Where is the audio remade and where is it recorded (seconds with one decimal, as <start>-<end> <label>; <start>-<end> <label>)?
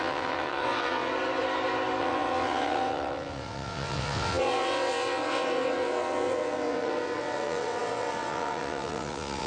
0.0-1.1 remade; 1.1-2.0 recorded; 2.0-9.5 remade